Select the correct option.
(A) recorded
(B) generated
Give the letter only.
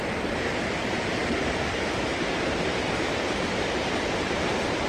B